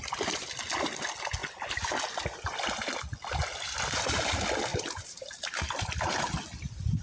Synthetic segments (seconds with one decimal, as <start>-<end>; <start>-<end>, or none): 4.7-6.3